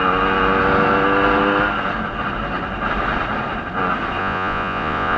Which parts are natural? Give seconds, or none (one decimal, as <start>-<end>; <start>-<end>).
0.0-4.2